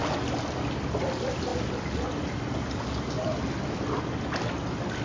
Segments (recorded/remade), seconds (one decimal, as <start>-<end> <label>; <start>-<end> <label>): 0.0-5.0 recorded